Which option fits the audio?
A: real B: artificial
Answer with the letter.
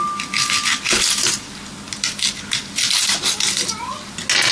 A